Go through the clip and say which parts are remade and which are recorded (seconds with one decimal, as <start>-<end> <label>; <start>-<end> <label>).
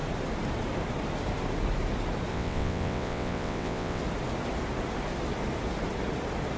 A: 0.0-2.3 recorded; 2.3-4.0 remade; 4.0-6.6 recorded